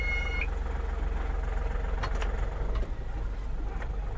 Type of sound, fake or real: real